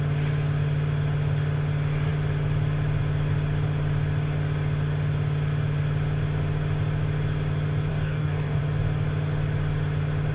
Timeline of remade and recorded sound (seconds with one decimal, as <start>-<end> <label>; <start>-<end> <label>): 0.0-7.9 recorded; 7.9-8.6 remade; 8.6-10.3 recorded